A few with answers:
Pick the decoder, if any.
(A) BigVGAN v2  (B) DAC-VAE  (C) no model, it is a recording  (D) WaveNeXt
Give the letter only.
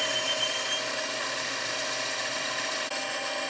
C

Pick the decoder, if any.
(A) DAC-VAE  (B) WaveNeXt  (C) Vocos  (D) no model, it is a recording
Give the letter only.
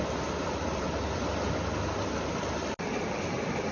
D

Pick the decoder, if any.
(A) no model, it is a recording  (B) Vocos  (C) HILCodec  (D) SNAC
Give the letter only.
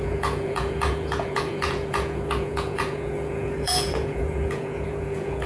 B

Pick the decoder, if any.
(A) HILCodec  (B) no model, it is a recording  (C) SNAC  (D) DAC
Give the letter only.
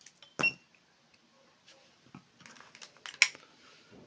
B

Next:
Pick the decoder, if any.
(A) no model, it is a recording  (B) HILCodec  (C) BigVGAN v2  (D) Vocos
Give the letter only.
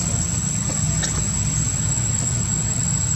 A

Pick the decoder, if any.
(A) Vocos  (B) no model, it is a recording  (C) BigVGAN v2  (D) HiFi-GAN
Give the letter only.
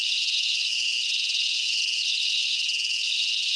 A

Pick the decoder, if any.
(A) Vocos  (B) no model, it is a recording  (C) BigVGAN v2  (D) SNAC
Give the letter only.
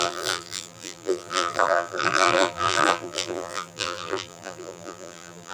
C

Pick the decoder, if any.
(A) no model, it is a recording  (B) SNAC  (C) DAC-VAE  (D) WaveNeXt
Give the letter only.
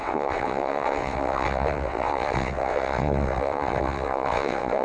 D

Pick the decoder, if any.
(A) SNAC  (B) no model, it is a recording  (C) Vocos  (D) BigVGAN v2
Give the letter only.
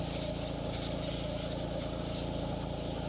B